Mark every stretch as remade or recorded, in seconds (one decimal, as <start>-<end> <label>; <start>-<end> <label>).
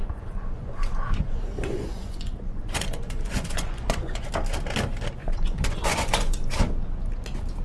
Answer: 0.0-4.3 remade; 4.3-5.2 recorded; 5.2-6.6 remade; 6.6-7.6 recorded